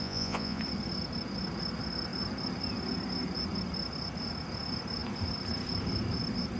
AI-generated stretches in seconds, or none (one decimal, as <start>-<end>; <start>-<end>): 0.0-0.6